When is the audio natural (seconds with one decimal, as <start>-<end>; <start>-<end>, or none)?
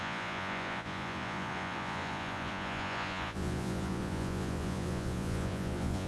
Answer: none